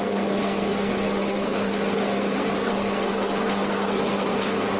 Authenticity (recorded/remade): remade